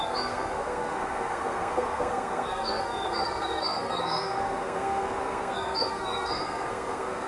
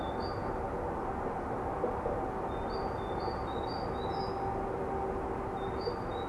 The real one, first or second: second